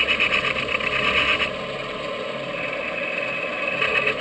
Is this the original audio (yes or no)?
yes